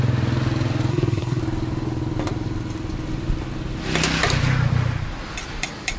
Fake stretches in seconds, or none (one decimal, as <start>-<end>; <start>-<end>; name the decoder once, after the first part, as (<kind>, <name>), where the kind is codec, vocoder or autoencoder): 0.9-1.4 (codec, SNAC)